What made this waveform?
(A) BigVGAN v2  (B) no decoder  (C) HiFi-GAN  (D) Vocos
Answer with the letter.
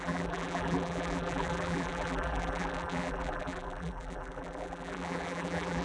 A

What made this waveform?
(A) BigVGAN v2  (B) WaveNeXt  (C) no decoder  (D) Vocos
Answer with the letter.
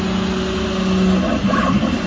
C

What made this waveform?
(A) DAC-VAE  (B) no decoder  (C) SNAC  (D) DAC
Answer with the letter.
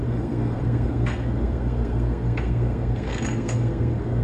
C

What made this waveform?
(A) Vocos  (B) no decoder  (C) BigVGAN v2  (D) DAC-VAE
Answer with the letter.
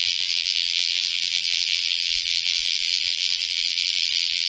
C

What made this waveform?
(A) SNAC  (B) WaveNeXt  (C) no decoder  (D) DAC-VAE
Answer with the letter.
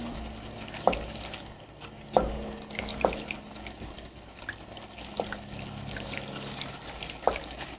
C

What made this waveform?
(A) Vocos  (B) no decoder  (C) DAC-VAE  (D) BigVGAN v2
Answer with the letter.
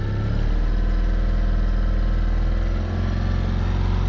B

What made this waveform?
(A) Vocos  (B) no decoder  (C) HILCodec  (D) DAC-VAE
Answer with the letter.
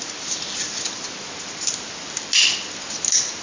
B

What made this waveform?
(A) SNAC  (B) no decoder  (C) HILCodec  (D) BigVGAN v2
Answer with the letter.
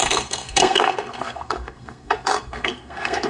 A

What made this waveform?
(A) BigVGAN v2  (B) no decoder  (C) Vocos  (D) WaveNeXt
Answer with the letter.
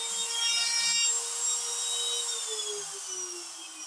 B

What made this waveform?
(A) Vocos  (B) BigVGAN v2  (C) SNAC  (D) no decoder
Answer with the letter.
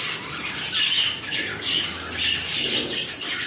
D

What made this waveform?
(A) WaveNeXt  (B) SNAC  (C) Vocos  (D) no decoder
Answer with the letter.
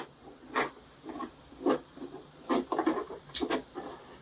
D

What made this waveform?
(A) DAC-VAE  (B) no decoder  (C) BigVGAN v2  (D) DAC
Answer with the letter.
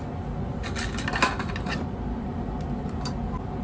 B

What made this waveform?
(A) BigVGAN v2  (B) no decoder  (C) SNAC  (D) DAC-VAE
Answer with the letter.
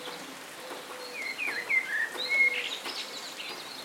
B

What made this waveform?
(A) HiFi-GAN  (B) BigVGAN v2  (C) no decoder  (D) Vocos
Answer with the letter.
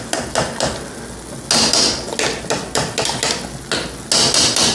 C